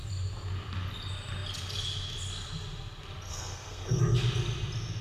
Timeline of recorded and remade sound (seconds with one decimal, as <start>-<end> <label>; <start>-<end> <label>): 0.0-3.3 recorded; 3.3-4.0 remade; 4.0-5.0 recorded